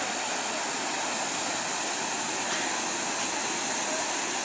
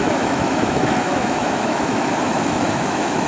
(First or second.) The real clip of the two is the first